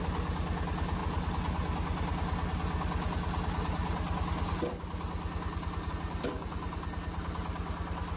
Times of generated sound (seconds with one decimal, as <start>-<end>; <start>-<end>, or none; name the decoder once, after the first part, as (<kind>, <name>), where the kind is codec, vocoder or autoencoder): none